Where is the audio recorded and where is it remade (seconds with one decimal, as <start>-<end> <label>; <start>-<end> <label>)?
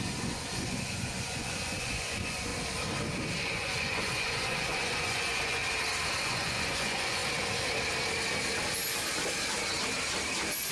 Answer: 0.0-2.5 remade; 2.5-3.4 recorded; 3.4-5.6 remade; 5.6-6.2 recorded; 6.2-7.2 remade; 7.2-10.7 recorded